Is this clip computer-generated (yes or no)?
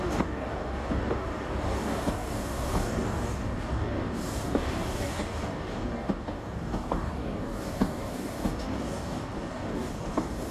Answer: yes